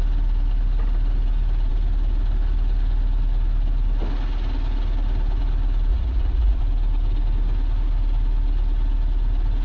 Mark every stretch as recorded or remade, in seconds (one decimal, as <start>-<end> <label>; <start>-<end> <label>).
0.0-5.9 recorded; 5.9-6.6 remade; 6.6-9.6 recorded